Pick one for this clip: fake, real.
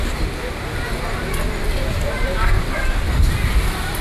real